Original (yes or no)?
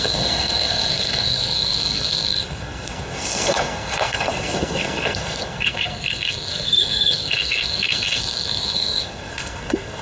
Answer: no